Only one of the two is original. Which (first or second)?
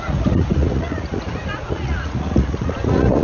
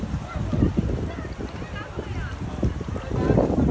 second